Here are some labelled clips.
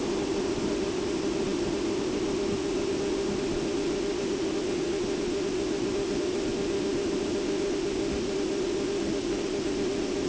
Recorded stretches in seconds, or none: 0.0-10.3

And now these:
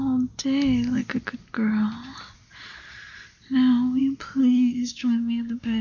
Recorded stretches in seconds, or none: 0.0-4.4

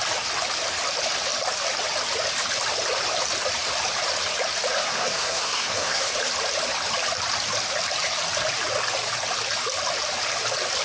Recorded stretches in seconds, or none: 0.0-4.8; 6.1-10.8